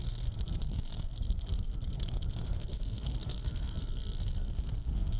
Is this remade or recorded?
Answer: remade